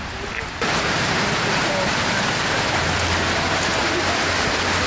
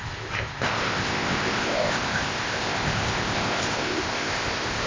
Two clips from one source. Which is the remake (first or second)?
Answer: second